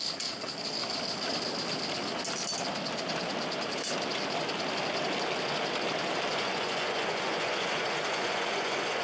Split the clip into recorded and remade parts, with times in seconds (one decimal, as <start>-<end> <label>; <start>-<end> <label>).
0.0-6.3 recorded; 6.3-9.0 remade